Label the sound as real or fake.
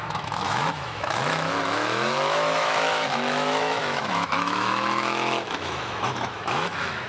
fake